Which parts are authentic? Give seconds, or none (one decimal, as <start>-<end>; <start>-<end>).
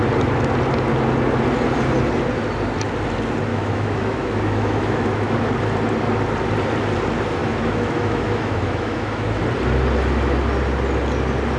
0.0-3.5; 5.5-7.4; 9.4-11.6